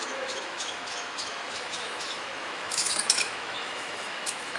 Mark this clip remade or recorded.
remade